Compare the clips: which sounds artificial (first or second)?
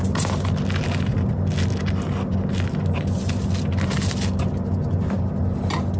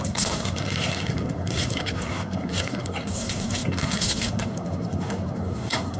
second